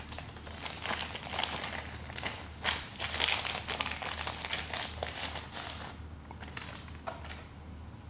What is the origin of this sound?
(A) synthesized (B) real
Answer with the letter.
B